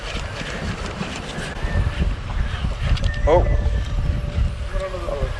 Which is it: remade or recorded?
recorded